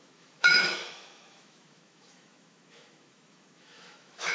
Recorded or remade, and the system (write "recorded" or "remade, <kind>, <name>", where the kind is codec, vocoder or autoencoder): remade, autoencoder, DAC-VAE